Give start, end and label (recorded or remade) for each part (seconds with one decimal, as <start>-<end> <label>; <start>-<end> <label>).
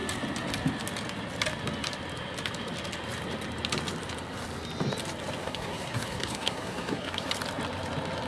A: 0.0-5.4 recorded; 5.4-7.3 remade; 7.3-8.3 recorded